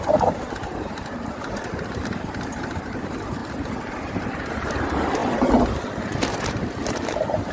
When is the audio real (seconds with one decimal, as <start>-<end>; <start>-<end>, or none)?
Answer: 3.4-4.0; 5.2-6.0